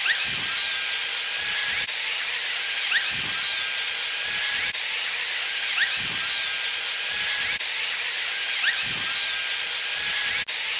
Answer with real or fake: real